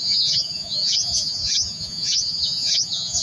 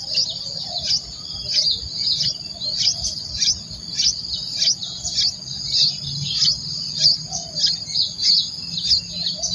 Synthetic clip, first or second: first